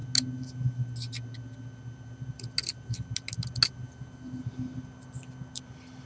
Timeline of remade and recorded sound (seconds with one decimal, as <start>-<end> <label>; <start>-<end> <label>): 0.0-6.1 recorded